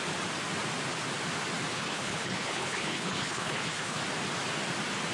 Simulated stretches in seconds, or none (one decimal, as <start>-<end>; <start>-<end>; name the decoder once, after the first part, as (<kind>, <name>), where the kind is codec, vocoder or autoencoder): 1.7-4.0 (codec, HILCodec)